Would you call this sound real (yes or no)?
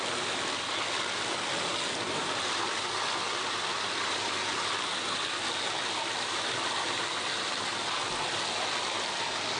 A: yes